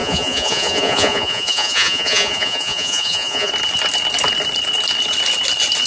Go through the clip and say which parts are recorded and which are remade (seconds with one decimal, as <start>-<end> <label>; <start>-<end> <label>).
0.0-3.5 remade; 3.5-5.9 recorded

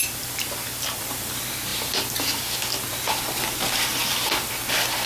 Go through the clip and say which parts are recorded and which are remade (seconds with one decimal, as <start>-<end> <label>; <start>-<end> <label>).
0.0-5.1 recorded

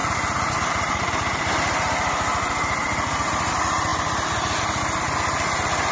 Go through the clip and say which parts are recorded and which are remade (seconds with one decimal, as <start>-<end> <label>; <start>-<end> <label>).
0.0-5.9 recorded